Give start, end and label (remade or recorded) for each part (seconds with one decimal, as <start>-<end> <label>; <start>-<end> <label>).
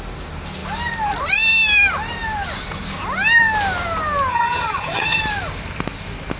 0.0-4.3 recorded; 4.3-5.2 remade; 5.2-6.4 recorded